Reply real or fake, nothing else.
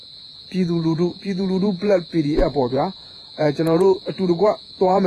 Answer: fake